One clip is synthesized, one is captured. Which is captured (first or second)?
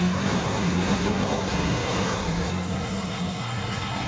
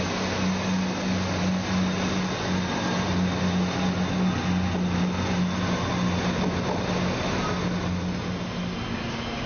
second